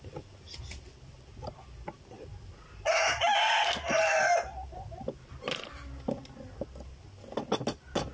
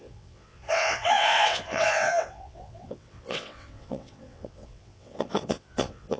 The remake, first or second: second